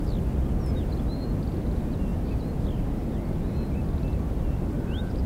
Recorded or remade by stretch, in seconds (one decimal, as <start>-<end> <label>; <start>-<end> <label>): 0.0-5.3 recorded